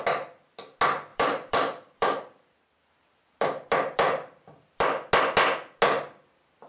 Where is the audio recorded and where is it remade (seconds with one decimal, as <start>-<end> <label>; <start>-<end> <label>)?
0.0-1.1 recorded; 1.1-5.1 remade; 5.1-6.7 recorded